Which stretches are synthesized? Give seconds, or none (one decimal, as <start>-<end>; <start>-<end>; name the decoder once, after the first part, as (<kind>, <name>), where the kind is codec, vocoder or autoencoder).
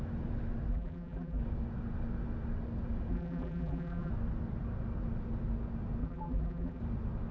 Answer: 0.7-1.4 (vocoder, BigVGAN v2); 3.1-4.1; 6.0-6.8